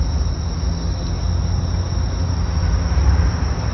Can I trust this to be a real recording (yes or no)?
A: yes